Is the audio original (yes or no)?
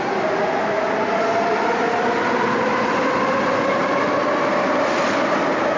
yes